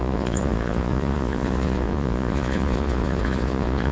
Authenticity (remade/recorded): remade